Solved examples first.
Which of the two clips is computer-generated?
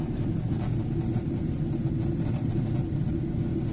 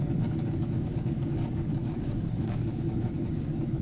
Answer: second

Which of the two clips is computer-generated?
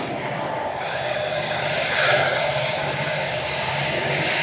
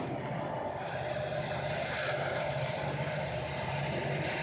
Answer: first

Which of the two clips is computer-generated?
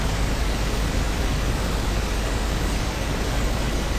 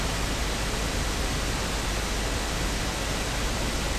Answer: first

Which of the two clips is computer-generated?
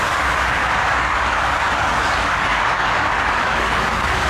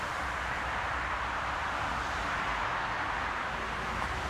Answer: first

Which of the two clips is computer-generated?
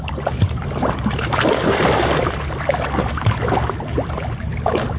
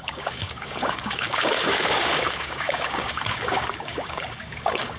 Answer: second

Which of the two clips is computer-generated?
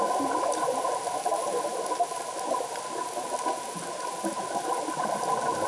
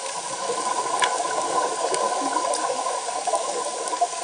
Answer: second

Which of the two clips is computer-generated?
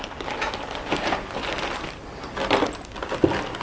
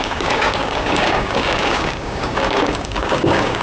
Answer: second